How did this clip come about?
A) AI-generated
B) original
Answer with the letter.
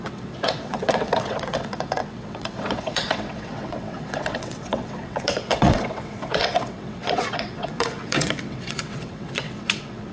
A